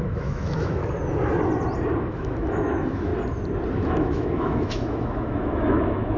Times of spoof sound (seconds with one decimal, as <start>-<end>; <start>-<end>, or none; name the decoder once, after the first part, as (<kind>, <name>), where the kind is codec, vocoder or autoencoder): 0.0-0.8 (autoencoder, DAC-VAE); 2.0-3.1; 3.7-6.2